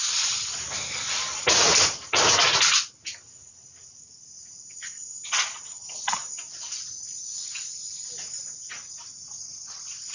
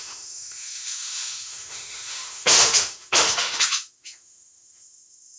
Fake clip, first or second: second